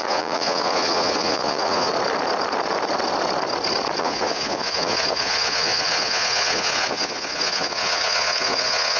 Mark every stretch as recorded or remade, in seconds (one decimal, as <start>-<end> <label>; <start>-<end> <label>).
0.0-1.9 remade; 1.9-4.0 recorded; 4.0-9.0 remade